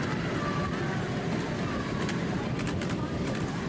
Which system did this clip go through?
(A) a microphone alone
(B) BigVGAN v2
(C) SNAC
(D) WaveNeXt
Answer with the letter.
A